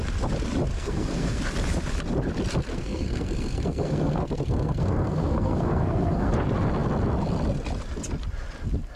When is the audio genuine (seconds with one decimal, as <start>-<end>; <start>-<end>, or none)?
0.0-0.7; 1.4-2.7; 6.3-9.0